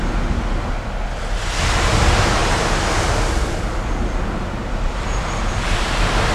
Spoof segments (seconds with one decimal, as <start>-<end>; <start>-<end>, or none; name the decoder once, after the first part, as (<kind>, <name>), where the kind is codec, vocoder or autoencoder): none